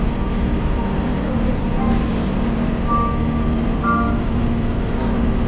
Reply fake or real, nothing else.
real